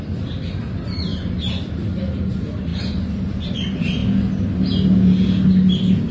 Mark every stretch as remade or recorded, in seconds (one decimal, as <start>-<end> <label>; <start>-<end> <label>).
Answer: 0.0-1.1 remade; 1.1-1.7 recorded; 1.7-2.7 remade; 2.7-3.5 recorded; 3.5-4.0 remade; 4.0-6.1 recorded